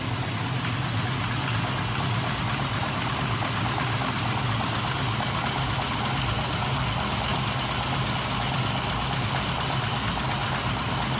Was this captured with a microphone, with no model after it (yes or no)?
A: yes